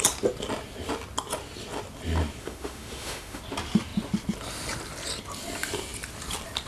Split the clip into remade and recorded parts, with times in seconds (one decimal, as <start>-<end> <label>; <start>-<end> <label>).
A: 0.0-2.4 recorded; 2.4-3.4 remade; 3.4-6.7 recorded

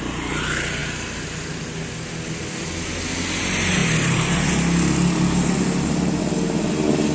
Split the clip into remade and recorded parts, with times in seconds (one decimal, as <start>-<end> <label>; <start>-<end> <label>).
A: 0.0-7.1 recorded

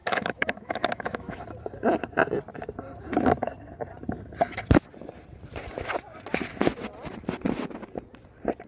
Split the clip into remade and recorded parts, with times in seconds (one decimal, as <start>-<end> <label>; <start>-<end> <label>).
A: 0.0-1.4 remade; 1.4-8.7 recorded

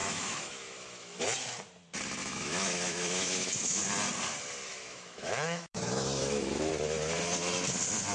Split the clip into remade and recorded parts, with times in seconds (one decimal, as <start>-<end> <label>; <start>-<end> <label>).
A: 0.0-1.2 remade; 1.2-2.2 recorded; 2.2-3.8 remade; 3.8-4.7 recorded; 4.7-6.7 remade; 6.7-8.1 recorded